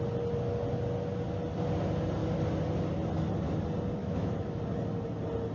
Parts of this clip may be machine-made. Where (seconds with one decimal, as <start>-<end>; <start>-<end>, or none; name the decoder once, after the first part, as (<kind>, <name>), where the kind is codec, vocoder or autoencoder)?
4.0-4.6 (autoencoder, DAC-VAE)